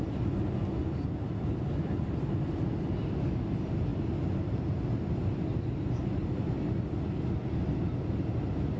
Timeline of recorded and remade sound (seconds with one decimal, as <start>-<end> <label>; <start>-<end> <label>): 0.0-8.8 recorded